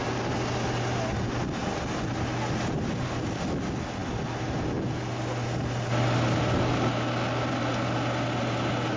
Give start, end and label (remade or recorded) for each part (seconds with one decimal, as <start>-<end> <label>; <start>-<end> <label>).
0.0-9.0 recorded